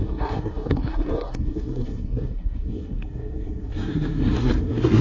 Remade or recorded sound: remade